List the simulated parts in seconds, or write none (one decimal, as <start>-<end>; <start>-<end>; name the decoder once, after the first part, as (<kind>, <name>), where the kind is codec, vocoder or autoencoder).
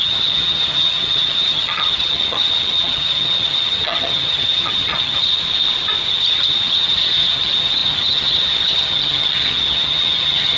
0.0-5.4 (vocoder, HiFi-GAN); 6.1-10.6